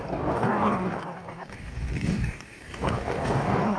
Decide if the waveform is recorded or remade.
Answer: remade